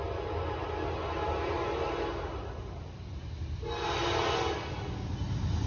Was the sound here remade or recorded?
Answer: recorded